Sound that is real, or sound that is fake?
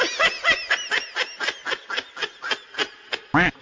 real